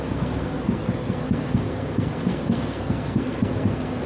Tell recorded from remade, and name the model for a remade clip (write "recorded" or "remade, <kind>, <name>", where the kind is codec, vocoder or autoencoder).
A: remade, codec, SNAC